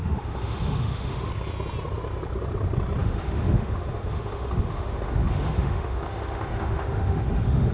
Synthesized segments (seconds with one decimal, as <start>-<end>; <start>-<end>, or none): 0.0-1.3; 3.0-7.7